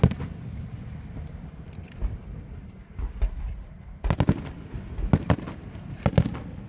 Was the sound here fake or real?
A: real